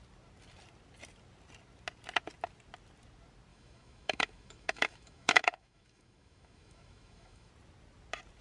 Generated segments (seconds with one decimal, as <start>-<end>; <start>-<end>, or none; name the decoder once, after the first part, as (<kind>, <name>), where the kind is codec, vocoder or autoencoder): 3.5-7.5 (autoencoder, DAC-VAE)